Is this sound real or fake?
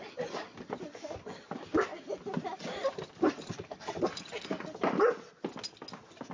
real